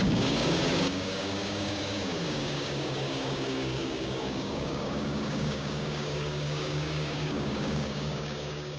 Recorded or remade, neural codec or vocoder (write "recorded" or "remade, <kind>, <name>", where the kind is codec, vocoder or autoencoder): remade, codec, DAC